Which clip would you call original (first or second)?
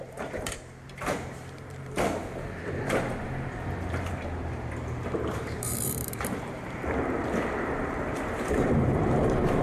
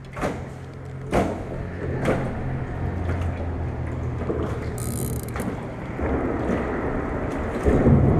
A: second